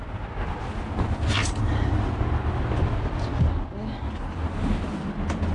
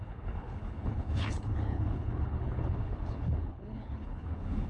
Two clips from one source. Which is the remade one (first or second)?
second